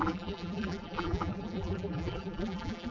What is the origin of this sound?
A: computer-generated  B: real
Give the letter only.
A